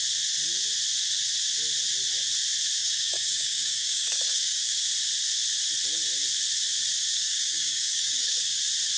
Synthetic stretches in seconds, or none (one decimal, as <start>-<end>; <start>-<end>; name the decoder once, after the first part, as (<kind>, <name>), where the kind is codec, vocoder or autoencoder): 2.8-4.8 (codec, DAC); 7.0-8.6

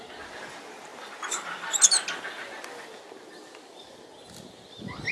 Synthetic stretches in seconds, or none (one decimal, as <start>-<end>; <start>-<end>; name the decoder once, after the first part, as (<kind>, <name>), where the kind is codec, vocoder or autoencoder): none

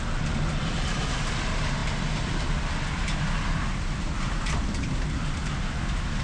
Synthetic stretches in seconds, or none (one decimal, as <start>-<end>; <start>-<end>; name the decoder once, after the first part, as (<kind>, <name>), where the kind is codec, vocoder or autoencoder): 0.0-6.2 (vocoder, BigVGAN v2)